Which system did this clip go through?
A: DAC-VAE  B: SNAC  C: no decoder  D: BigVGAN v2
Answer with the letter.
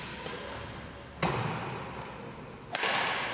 C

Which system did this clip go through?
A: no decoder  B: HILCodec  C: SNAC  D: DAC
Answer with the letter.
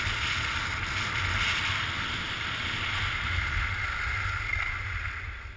A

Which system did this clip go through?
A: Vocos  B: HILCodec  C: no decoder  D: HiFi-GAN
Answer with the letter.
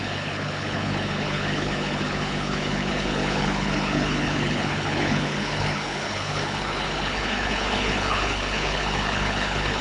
B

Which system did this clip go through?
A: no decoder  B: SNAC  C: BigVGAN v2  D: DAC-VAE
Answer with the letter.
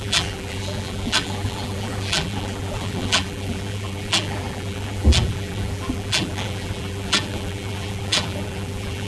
C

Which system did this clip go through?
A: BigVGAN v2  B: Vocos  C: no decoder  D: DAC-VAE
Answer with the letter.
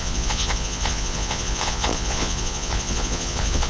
B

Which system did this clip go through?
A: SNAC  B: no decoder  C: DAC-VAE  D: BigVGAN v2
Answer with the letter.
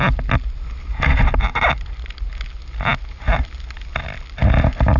B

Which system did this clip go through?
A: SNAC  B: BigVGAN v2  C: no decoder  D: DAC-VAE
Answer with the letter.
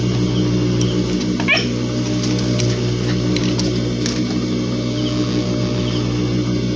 C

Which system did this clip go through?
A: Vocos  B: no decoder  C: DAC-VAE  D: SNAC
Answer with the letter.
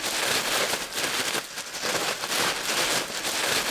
B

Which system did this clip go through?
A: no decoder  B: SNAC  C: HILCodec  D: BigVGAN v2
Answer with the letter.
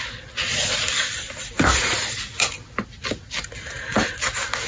A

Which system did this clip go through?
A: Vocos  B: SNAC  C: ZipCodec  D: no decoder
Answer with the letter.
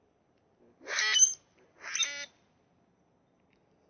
D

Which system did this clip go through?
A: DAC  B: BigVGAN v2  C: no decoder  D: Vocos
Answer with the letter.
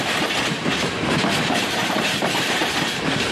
B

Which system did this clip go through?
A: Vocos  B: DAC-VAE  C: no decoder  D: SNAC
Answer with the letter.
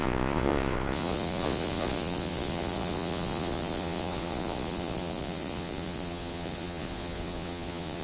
A